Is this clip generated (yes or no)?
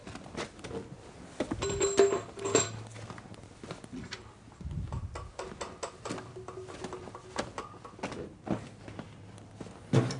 no